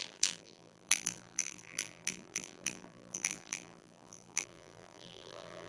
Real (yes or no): no